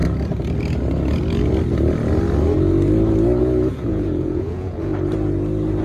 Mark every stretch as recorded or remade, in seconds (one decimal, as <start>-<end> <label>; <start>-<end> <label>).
0.0-3.4 recorded; 3.4-4.9 remade; 4.9-5.8 recorded